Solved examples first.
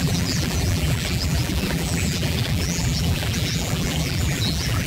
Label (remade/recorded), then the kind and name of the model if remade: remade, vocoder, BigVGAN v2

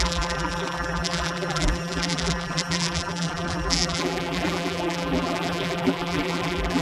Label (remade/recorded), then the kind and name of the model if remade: remade, vocoder, BigVGAN v2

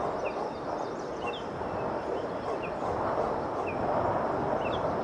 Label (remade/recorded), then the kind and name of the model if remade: recorded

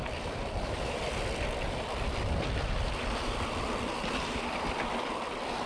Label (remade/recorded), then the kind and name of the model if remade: remade, vocoder, BigVGAN v2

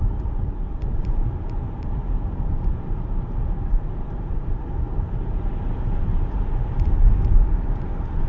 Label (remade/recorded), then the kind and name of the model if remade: remade, vocoder, BigVGAN v2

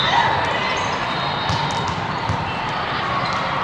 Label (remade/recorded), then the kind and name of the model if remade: recorded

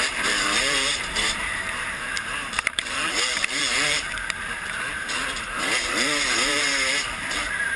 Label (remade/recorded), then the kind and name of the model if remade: remade, vocoder, BigVGAN v2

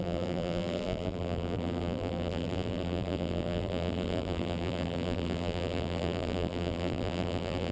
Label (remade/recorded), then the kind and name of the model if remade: remade, vocoder, BigVGAN v2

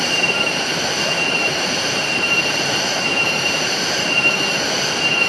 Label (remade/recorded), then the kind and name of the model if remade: remade, vocoder, BigVGAN v2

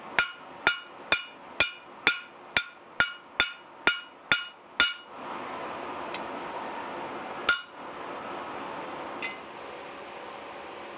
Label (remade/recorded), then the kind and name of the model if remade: recorded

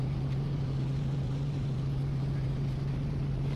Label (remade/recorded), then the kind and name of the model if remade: remade, vocoder, BigVGAN v2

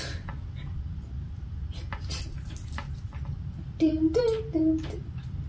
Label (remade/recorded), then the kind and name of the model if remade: recorded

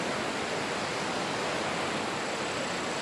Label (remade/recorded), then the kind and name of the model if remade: recorded